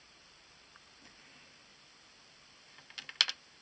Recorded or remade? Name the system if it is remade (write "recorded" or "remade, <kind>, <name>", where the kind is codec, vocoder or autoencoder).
recorded